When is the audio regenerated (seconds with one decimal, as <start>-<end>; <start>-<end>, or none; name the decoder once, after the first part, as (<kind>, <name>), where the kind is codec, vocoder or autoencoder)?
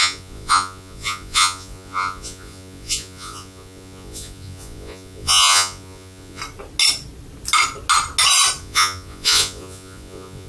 0.0-6.4 (vocoder, Vocos); 8.6-10.5